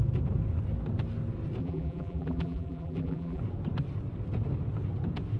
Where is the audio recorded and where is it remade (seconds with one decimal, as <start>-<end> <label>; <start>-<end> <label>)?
0.0-1.6 recorded; 1.6-3.4 remade; 3.4-5.4 recorded